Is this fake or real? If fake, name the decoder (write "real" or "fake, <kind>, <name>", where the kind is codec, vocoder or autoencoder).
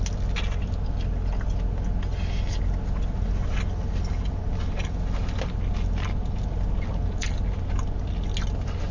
real